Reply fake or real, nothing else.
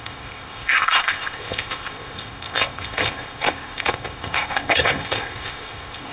fake